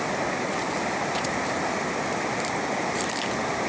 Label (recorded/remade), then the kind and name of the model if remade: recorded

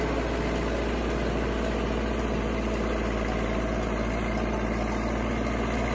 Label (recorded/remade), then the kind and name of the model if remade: recorded